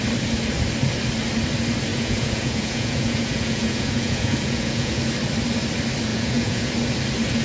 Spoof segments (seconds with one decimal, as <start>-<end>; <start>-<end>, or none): 1.9-5.0; 6.1-6.7